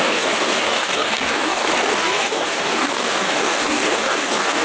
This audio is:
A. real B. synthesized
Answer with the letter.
B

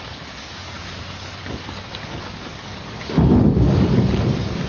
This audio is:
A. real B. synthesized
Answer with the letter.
B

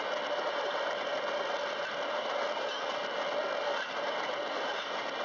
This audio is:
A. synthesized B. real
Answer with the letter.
B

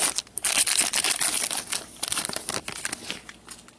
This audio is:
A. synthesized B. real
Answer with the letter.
B